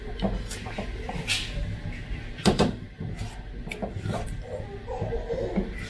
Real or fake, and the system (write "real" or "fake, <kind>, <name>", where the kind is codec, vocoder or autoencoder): real